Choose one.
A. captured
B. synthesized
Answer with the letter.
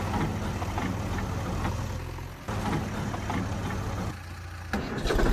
A